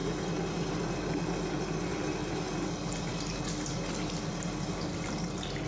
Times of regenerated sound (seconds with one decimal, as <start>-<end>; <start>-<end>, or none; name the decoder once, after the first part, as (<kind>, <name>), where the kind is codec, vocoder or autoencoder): none